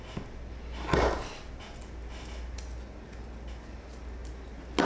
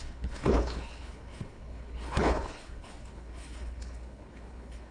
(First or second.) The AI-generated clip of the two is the second